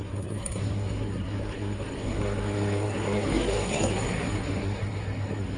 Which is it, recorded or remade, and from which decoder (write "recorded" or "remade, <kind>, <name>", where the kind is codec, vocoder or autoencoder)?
remade, codec, SNAC